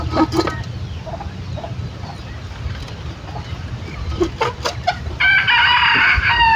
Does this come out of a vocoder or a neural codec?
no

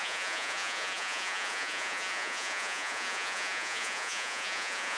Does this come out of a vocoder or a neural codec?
yes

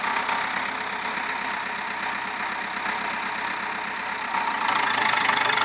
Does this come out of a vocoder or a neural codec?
no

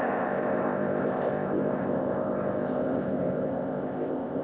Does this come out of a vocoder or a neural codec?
yes